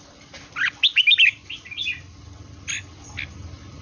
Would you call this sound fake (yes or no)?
no